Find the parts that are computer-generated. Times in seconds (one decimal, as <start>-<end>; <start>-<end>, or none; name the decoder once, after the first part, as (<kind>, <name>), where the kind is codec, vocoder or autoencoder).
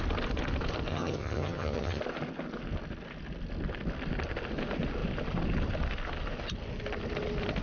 0.9-2.0 (vocoder, HiFi-GAN)